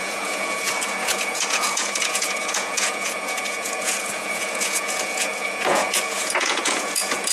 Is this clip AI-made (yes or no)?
yes